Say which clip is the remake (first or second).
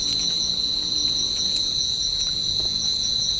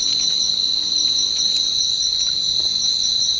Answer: first